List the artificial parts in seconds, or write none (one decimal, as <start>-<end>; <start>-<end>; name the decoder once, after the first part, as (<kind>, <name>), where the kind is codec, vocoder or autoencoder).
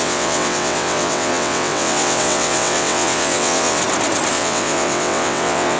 0.0-3.8 (vocoder, WaveNeXt); 4.3-5.8